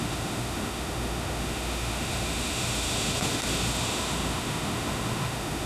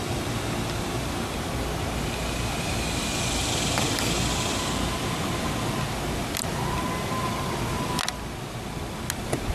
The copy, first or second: first